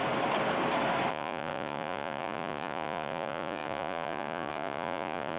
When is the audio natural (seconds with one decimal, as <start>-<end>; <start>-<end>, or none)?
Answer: 0.0-1.1